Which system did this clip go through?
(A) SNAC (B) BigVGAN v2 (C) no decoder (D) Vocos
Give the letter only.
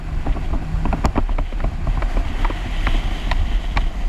C